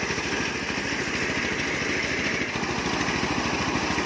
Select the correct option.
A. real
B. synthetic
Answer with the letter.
A